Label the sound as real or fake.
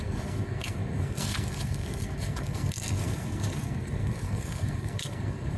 fake